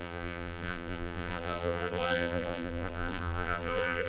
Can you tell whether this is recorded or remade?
remade